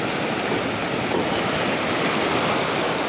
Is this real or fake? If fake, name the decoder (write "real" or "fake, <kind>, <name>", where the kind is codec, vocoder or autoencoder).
real